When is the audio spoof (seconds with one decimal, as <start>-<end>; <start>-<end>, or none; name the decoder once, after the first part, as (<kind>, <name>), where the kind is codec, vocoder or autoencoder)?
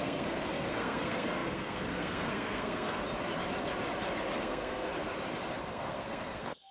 0.0-3.0 (codec, SNAC); 4.4-4.9; 5.7-6.7